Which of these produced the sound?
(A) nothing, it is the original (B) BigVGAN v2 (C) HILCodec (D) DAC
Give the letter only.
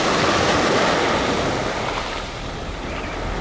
A